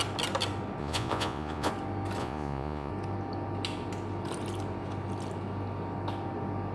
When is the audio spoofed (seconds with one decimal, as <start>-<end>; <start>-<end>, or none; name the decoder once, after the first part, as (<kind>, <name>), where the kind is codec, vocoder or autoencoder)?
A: 0.8-1.7 (vocoder, Vocos); 2.2-2.9